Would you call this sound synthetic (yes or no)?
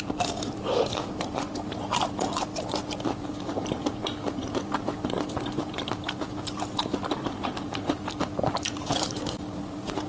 yes